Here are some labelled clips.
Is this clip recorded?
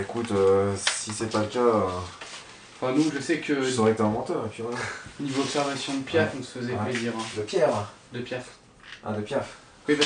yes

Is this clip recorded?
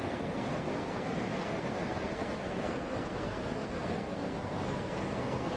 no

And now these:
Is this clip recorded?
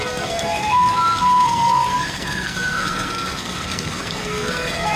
no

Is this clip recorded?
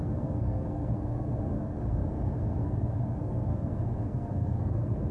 no